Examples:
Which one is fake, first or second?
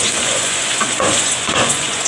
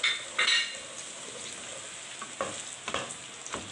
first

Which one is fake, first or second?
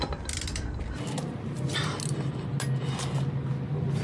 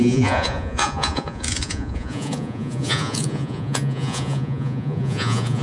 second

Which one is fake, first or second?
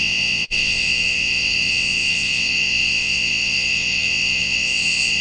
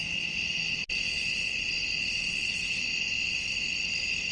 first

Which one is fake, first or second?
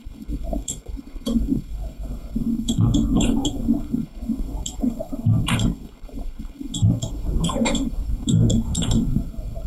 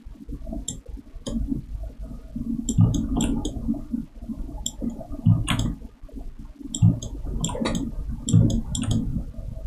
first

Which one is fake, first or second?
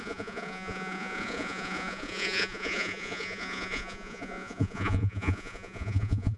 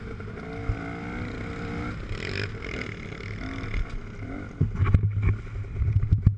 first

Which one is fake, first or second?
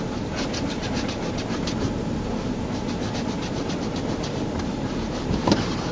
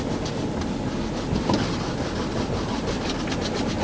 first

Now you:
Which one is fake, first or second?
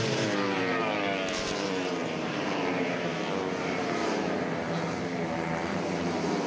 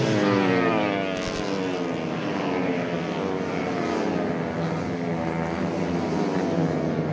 first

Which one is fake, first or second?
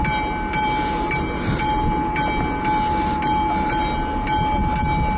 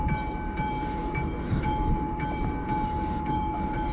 second